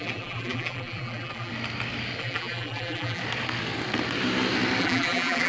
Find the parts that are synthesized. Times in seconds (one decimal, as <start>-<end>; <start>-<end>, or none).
0.0-1.5; 2.2-3.2; 4.8-5.5